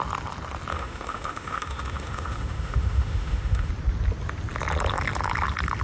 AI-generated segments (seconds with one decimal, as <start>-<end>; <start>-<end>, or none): 0.7-3.7